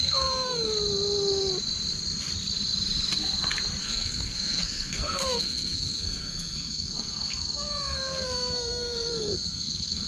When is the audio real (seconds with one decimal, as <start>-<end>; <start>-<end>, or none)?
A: 0.7-3.8